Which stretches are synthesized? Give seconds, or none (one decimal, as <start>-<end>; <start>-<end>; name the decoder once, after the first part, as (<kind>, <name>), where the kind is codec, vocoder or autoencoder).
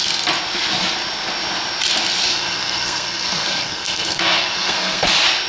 2.3-5.1 (codec, SNAC)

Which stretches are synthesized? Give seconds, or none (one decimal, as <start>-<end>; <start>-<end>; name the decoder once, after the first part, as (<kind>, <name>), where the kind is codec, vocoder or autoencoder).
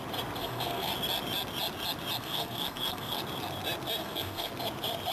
0.4-0.9 (codec, SNAC); 2.2-3.2; 4.0-4.5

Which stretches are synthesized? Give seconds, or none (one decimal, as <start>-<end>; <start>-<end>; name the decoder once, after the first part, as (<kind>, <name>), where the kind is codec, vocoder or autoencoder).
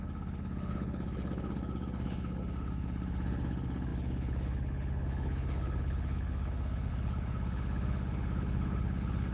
0.0-9.3 (codec, HILCodec)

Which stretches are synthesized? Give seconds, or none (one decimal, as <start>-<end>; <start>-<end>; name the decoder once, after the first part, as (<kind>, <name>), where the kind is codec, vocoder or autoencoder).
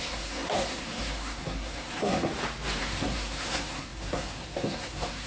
0.0-2.3 (codec, SNAC); 2.8-5.3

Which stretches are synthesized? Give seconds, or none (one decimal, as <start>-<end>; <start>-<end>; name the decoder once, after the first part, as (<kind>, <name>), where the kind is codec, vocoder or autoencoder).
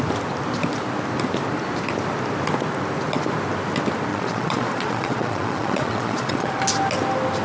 4.1-6.6 (vocoder, Vocos)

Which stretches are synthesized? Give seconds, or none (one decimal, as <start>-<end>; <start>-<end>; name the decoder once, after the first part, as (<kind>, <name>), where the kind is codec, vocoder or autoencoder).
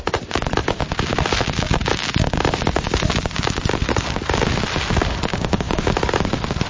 5.3-5.9 (codec, DAC)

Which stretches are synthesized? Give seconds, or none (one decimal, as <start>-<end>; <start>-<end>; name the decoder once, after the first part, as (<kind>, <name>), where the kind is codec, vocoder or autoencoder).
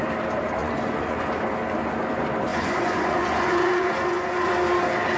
0.6-1.3 (vocoder, Vocos); 2.5-4.5